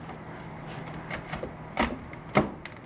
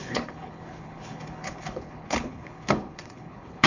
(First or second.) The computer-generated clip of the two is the second